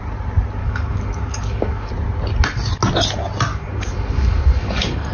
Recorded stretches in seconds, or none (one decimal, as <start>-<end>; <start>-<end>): 0.0-0.6; 1.9-3.5